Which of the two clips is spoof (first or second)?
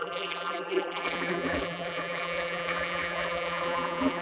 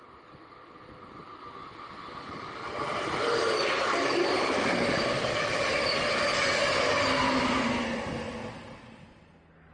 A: first